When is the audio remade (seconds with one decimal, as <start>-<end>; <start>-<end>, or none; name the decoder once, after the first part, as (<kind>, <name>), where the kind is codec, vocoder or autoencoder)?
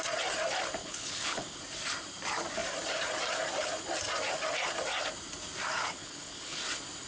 0.8-1.6 (codec, HILCodec); 5.8-6.6